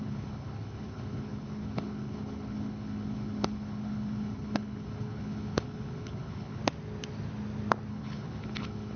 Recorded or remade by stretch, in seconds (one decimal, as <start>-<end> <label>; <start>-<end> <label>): 0.0-6.6 remade; 6.6-7.9 recorded; 7.9-9.0 remade